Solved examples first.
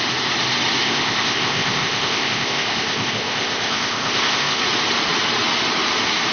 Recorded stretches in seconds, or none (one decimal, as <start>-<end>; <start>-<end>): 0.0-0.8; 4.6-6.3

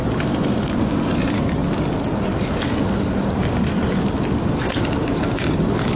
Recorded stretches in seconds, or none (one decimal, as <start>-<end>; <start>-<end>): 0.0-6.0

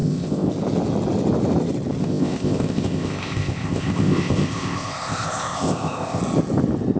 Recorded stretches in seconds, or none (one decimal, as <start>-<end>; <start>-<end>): 0.5-2.0; 6.2-7.0